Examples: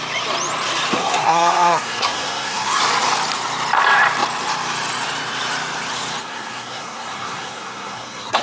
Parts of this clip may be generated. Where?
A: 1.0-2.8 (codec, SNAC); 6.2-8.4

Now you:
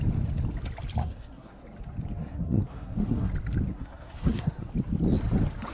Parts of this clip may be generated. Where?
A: 1.0-1.6 (codec, SNAC); 2.2-3.3; 3.7-4.7

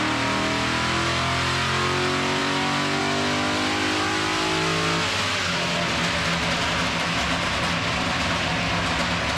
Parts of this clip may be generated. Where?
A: none

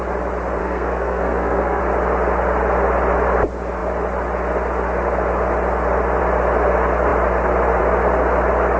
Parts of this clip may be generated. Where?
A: 0.6-1.8 (codec, SNAC)

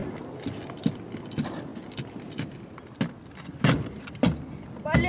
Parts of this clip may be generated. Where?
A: none

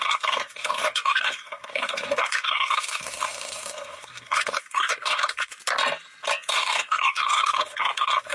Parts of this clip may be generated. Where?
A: 0.0-5.5 (codec, SNAC); 6.5-8.3